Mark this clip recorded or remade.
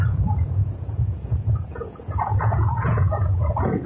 remade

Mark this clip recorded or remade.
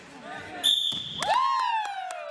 recorded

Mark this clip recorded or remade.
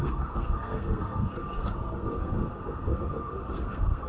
remade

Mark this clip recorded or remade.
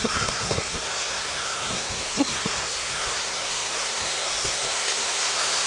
remade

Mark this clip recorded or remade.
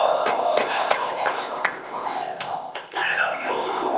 remade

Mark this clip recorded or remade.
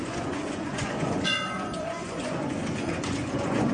remade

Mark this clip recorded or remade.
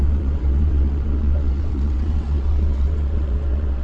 remade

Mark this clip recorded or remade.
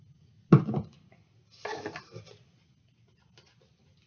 recorded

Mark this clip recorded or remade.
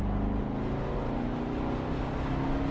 recorded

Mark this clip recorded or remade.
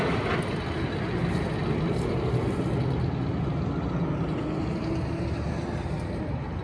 recorded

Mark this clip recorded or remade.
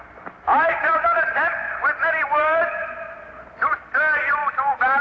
remade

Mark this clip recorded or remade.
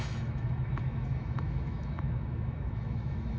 remade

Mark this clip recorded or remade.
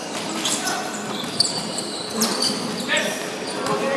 remade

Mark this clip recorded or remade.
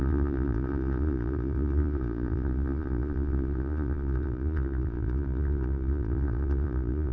remade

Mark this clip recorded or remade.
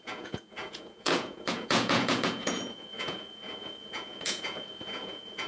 remade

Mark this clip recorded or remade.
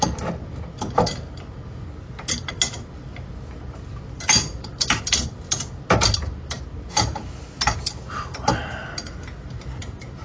recorded